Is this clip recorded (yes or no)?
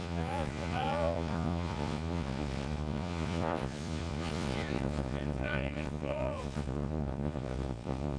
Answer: no